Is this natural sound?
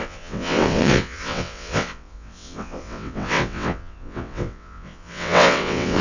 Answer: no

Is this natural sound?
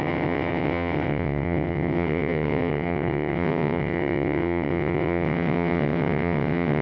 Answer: no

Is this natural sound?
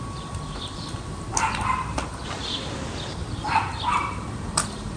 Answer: yes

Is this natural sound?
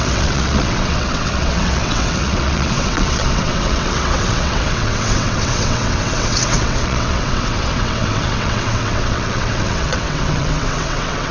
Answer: no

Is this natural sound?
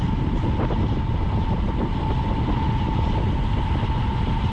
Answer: yes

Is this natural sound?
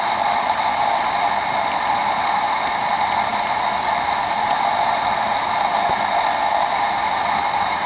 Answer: yes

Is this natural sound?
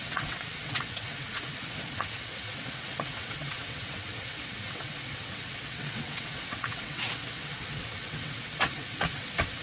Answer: no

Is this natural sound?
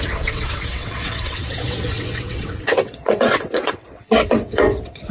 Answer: no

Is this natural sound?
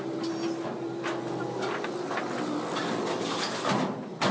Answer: yes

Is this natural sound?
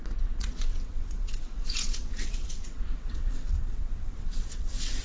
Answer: no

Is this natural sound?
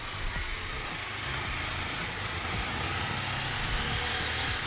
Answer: yes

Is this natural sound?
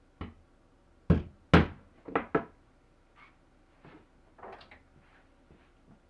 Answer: yes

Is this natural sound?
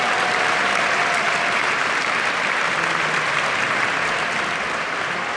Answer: yes